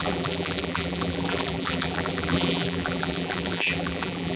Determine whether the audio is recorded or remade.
remade